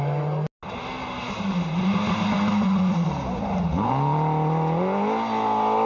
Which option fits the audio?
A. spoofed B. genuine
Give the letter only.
B